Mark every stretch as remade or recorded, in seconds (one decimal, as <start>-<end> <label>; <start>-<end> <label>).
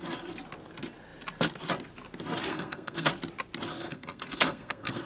0.0-2.5 recorded; 2.5-3.1 remade; 3.1-3.7 recorded; 3.7-5.1 remade